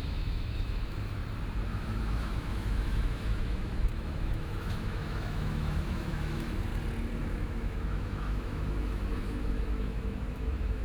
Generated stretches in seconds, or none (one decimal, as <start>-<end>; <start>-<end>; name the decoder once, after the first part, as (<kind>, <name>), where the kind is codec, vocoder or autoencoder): 0.0-1.2 (autoencoder, DAC-VAE); 1.7-6.7; 7.2-10.8